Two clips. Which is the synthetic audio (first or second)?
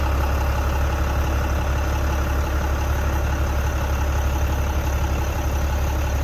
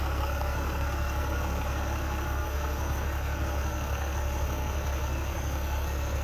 second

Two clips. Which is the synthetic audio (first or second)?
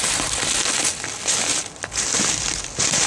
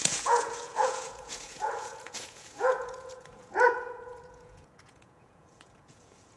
second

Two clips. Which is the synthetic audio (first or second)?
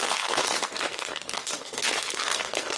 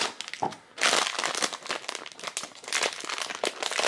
first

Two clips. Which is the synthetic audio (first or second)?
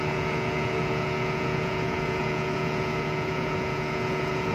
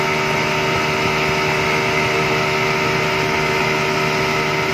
first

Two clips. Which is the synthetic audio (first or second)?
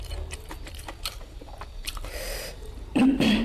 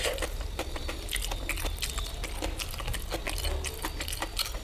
first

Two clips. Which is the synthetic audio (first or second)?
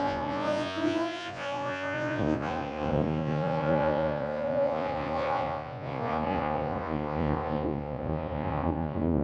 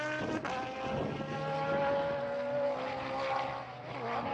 first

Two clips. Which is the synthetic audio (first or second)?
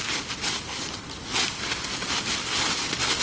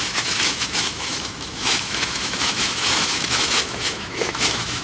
second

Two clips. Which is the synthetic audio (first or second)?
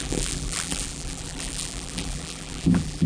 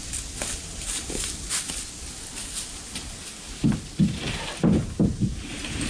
first